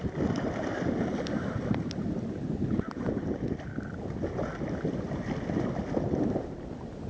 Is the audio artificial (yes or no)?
no